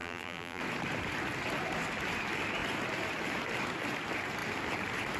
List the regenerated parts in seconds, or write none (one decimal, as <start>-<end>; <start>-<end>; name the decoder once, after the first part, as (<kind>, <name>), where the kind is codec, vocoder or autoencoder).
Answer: 0.0-0.6 (vocoder, BigVGAN v2)

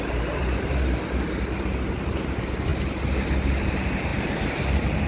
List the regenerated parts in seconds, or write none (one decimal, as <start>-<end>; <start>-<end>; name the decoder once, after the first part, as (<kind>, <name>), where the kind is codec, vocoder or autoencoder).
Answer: 0.0-0.4 (vocoder, BigVGAN v2); 2.1-2.7; 3.5-5.1